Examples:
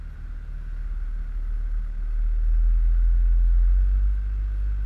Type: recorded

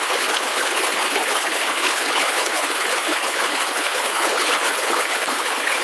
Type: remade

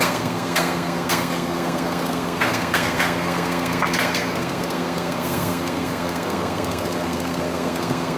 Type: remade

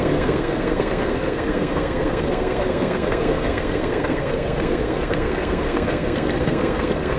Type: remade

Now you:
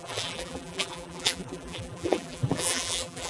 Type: remade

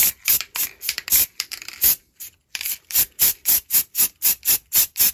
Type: remade